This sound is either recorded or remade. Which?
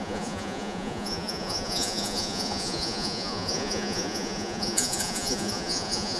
remade